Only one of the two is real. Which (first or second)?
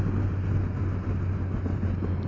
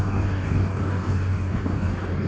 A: first